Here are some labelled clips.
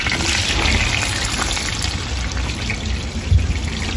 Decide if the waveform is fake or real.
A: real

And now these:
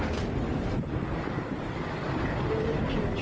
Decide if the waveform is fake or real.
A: real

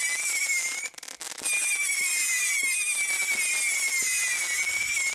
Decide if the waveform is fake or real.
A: real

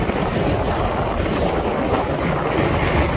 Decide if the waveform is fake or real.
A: real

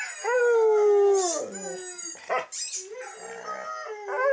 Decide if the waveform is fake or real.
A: real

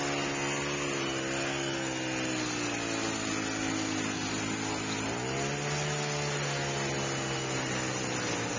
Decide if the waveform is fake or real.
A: real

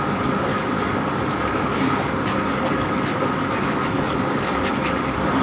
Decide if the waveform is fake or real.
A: fake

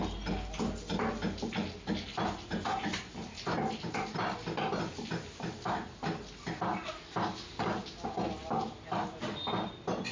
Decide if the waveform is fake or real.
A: real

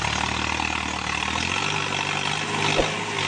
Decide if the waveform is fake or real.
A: real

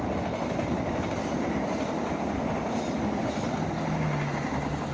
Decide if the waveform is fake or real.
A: real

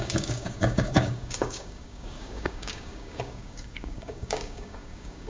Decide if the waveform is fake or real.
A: fake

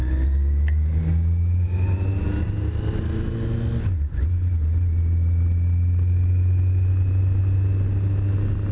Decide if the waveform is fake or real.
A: real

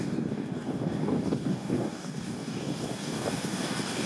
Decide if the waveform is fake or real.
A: fake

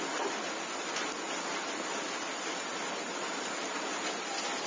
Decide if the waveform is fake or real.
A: real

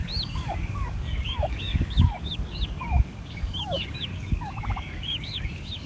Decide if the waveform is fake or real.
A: fake